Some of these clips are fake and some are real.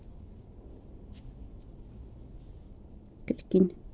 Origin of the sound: real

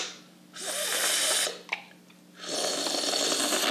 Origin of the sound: real